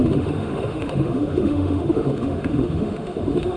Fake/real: fake